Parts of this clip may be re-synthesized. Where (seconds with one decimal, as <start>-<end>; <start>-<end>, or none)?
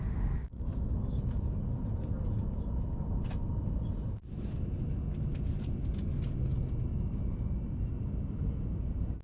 0.4-0.9